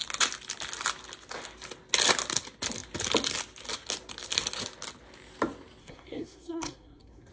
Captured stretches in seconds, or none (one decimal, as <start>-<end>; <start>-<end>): 0.0-5.8